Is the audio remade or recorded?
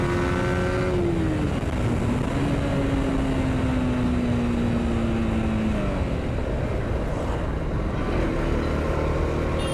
recorded